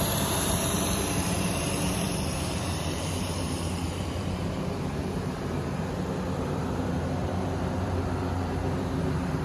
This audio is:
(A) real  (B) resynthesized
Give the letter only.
B